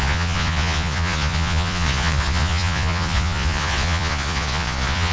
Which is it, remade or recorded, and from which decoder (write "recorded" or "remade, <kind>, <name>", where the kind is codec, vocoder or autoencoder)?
remade, vocoder, Vocos